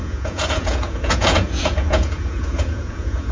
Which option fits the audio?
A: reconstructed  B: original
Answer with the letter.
A